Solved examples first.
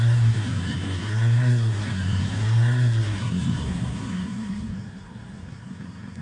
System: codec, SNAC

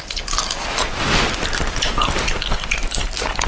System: none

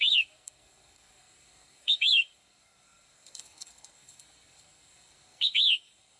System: codec, SNAC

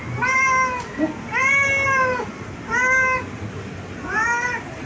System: none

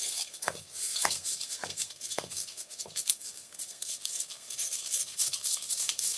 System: codec, SNAC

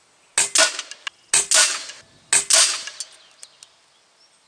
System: none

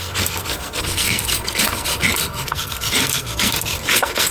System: codec, SNAC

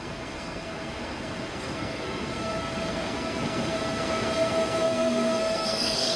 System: codec, SNAC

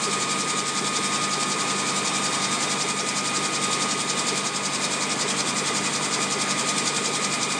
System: none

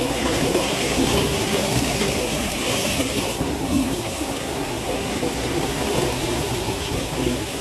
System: codec, SNAC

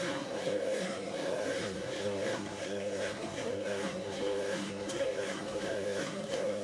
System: codec, SNAC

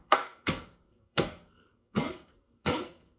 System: codec, SNAC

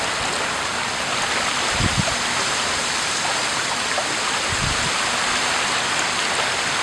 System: none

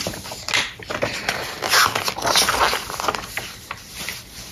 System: none